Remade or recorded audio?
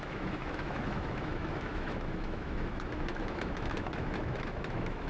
remade